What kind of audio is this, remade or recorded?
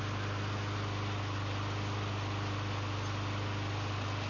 recorded